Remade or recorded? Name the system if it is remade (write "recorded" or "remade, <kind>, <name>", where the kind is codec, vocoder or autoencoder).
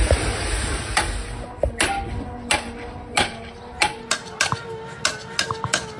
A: recorded